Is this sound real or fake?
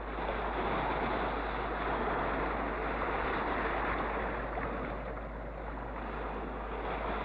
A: real